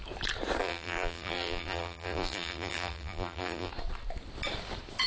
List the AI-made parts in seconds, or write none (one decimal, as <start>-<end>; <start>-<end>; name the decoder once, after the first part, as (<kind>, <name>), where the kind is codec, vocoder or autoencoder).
0.6-3.7 (vocoder, BigVGAN v2)

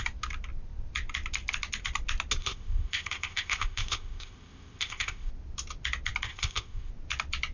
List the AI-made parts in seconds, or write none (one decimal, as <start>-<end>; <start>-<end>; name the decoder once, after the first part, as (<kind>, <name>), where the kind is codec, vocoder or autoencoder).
2.4-5.3 (codec, ZipCodec); 6.3-6.9

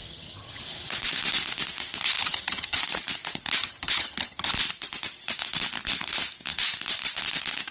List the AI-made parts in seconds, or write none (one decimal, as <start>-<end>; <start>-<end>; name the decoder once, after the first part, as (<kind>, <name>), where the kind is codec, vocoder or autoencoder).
0.0-0.6 (vocoder, HiFi-GAN); 2.2-2.8; 3.6-4.5

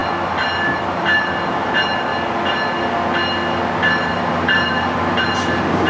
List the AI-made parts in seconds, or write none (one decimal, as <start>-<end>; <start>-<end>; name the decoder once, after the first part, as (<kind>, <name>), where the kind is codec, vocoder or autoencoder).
0.8-2.1 (vocoder, BigVGAN v2); 4.1-5.9

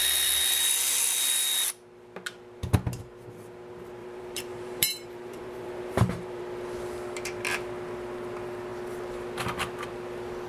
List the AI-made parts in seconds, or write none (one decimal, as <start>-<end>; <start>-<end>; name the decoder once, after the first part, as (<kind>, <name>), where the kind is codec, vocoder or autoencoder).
4.0-6.4 (vocoder, BigVGAN v2)

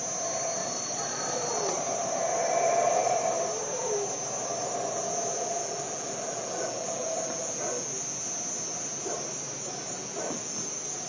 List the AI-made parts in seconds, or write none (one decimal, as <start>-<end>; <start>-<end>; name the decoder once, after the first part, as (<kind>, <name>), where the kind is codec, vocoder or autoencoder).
0.6-1.8 (vocoder, Vocos)